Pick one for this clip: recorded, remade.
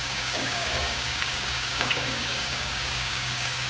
remade